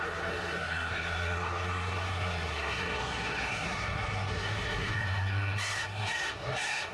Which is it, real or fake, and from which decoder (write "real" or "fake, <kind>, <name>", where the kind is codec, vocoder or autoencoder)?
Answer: fake, codec, SNAC